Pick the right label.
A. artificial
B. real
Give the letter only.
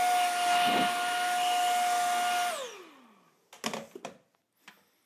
B